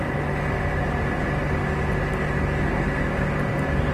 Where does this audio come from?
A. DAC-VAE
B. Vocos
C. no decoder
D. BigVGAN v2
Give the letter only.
C